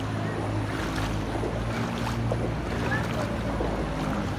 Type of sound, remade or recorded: recorded